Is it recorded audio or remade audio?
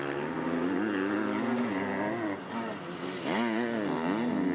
recorded